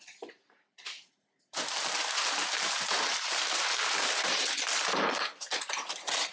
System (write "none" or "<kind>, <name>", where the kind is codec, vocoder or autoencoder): vocoder, BigVGAN v2